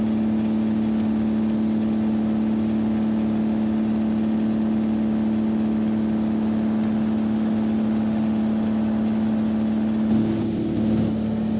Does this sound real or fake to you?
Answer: real